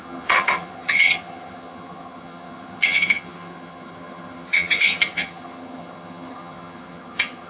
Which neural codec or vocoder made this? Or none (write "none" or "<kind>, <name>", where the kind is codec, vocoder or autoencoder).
vocoder, HiFi-GAN